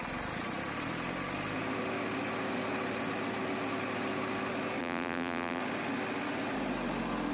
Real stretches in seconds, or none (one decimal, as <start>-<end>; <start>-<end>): 0.0-4.8; 5.6-7.3